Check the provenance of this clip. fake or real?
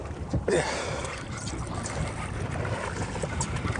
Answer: fake